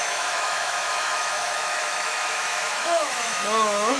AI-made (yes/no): yes